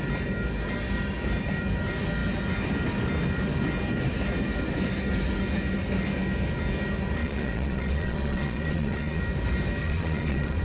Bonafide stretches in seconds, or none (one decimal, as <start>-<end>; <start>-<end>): 0.0-7.2; 9.2-9.8